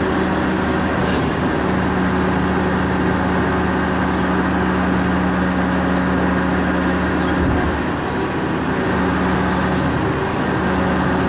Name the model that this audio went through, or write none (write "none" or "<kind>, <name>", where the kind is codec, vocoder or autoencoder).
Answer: none